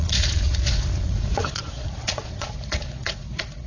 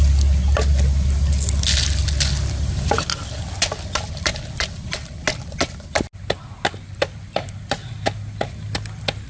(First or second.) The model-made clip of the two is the first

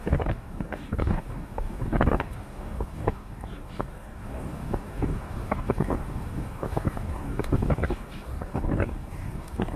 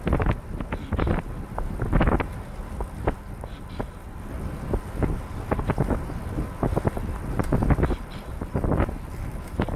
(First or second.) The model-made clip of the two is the first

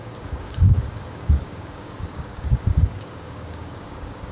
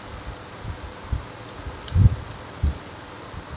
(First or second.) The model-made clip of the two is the first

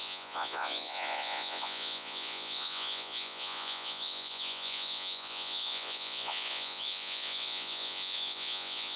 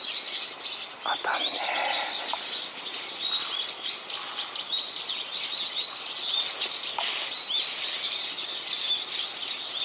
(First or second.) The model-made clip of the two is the first